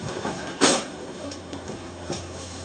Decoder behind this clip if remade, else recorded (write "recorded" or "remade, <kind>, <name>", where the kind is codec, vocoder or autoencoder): remade, codec, SNAC